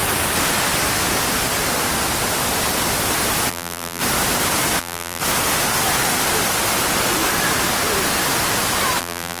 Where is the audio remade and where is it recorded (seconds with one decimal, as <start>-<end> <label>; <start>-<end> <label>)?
0.0-3.5 recorded; 3.5-4.0 remade; 4.0-4.8 recorded; 4.8-5.2 remade; 5.2-9.0 recorded; 9.0-9.4 remade